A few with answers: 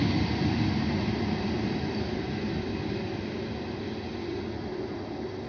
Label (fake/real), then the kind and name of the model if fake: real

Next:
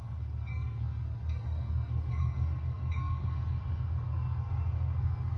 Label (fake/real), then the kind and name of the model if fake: fake, codec, SNAC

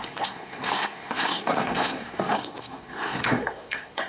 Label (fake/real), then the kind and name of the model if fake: fake, codec, SNAC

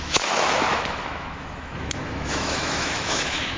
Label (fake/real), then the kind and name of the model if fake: fake, autoencoder, DAC-VAE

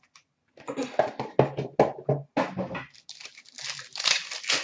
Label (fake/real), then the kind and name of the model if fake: real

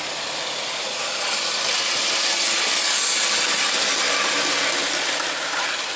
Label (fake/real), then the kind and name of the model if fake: real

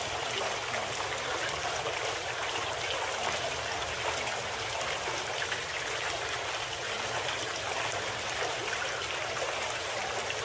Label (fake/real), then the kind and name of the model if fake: real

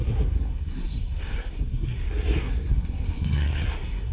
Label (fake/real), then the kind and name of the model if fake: fake, codec, SNAC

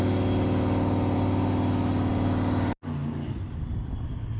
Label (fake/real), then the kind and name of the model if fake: real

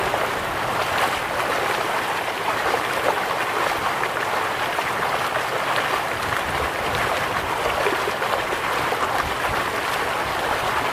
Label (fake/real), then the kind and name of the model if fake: real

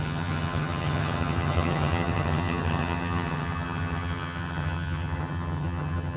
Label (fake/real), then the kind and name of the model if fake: fake, vocoder, HiFi-GAN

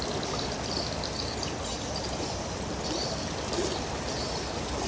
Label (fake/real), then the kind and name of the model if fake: real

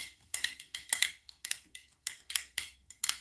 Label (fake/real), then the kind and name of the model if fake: fake, codec, SNAC